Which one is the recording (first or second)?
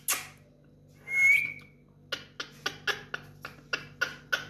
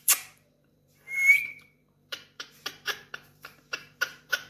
first